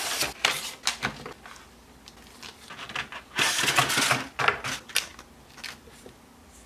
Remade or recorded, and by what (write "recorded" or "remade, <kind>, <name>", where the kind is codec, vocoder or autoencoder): recorded